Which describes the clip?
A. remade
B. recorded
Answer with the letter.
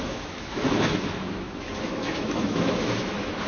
A